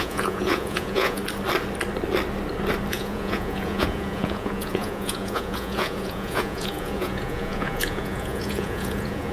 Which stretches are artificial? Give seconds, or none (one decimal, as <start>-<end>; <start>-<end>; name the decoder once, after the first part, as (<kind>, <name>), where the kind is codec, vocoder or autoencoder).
0.0-1.2 (vocoder, Vocos); 2.9-9.3